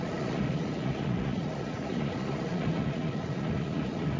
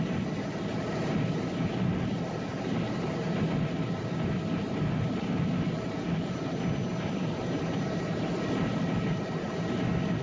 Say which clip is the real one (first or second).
second